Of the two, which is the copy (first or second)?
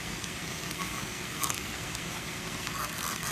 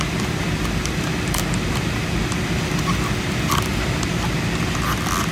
first